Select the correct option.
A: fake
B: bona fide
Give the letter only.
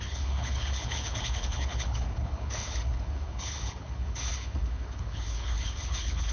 A